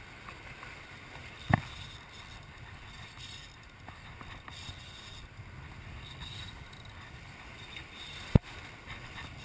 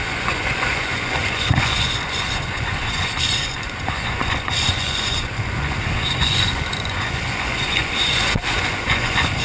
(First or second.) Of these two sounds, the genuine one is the first